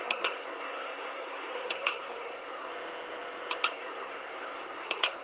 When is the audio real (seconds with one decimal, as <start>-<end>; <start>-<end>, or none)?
2.7-3.7